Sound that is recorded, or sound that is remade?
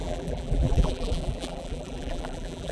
remade